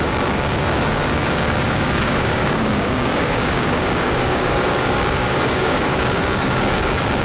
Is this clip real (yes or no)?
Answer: no